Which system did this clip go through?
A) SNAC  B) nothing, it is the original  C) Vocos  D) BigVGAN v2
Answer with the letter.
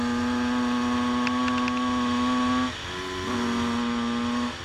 B